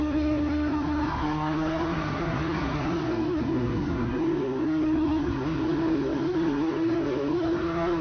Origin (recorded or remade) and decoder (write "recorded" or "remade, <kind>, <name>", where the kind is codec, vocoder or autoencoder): remade, codec, SNAC